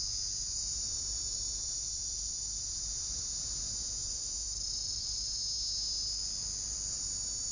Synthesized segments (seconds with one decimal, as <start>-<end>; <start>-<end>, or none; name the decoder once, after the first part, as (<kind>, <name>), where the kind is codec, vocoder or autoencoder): 0.6-3.2 (vocoder, BigVGAN v2); 4.0-5.4